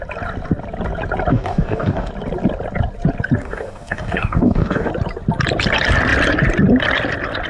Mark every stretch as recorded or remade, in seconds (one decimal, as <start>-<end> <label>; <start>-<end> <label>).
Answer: 0.0-1.3 recorded; 1.3-2.1 remade; 2.1-3.4 recorded; 3.4-4.9 remade; 4.9-7.5 recorded

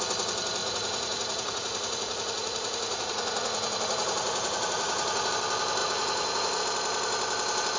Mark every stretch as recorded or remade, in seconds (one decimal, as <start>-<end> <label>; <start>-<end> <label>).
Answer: 0.0-0.6 recorded; 0.6-5.3 remade; 5.3-5.8 recorded; 5.8-6.6 remade; 6.6-7.8 recorded

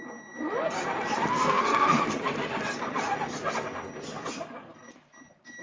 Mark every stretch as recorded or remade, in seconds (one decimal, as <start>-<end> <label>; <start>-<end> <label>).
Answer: 0.0-1.3 recorded; 1.3-2.0 remade; 2.0-5.6 recorded

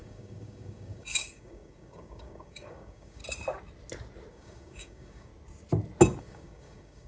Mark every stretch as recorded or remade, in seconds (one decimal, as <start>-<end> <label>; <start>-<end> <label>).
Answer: 0.0-3.2 remade; 3.2-4.3 recorded; 4.3-5.3 remade; 5.3-6.2 recorded; 6.2-7.1 remade